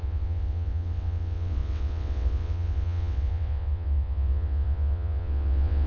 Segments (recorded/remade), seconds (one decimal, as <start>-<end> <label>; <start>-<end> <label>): 0.0-5.9 remade